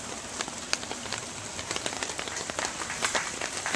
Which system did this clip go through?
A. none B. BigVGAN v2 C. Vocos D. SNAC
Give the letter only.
B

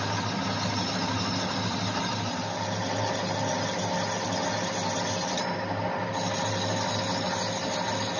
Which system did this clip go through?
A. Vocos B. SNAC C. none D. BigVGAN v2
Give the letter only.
C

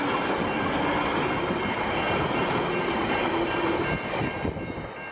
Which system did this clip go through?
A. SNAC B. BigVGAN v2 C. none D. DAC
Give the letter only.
B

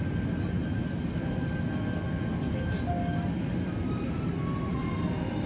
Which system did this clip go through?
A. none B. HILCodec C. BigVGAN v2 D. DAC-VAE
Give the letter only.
A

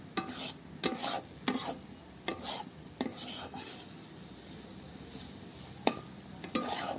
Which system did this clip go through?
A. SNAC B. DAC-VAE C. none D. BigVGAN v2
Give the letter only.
C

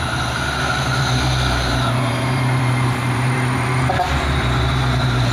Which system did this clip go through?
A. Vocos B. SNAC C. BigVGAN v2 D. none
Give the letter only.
C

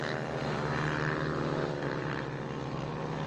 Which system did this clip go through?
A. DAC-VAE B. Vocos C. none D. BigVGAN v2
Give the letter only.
C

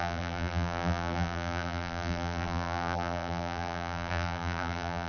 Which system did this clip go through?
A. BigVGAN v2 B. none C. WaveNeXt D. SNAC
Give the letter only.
A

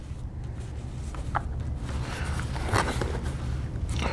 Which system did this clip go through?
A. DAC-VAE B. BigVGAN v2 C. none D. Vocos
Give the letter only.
C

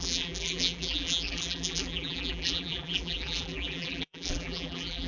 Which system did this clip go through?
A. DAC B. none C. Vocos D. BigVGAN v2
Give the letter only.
D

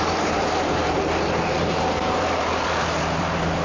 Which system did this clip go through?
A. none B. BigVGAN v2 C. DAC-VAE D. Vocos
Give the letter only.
B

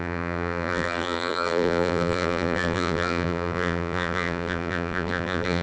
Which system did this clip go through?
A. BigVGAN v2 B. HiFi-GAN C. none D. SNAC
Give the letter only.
A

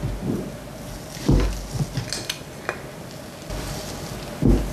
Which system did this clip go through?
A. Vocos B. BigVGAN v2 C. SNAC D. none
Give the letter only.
D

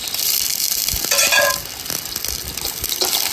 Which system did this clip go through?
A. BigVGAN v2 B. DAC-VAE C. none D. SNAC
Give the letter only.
C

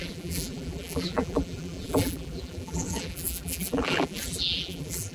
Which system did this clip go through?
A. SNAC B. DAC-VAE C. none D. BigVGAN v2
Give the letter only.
D